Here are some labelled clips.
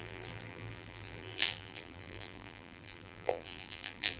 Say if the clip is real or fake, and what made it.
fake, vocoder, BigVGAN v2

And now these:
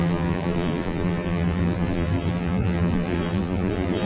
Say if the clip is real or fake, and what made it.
fake, vocoder, BigVGAN v2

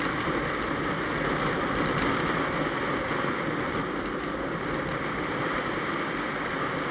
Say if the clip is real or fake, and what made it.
real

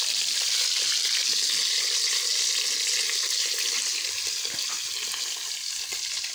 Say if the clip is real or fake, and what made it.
real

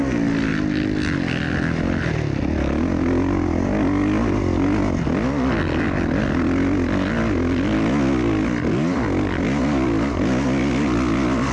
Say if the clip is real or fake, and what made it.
real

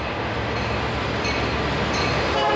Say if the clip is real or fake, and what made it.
fake, vocoder, BigVGAN v2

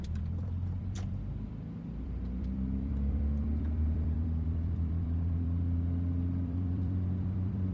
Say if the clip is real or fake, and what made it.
fake, vocoder, BigVGAN v2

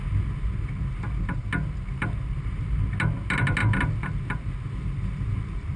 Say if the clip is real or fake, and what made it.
real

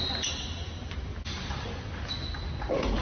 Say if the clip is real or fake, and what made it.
real